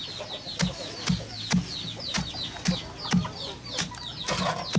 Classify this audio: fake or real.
real